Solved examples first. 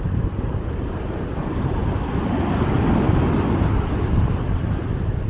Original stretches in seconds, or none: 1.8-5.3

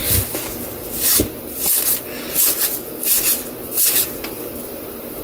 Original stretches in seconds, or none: 0.0-3.6

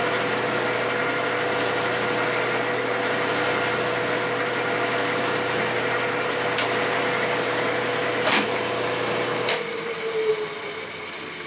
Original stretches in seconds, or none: 0.0-9.3; 10.3-11.5

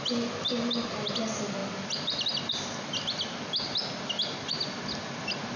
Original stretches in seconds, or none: 0.0-5.6

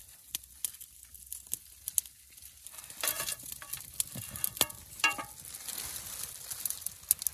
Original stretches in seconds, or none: 0.0-7.3

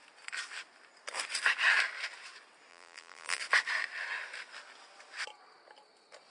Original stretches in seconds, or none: 0.0-2.7; 3.4-6.3

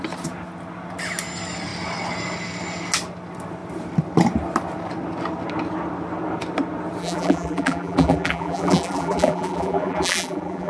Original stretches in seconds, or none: 0.0-7.0